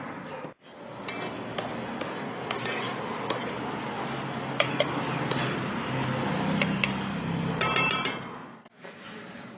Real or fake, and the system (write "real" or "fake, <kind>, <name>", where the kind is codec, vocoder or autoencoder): real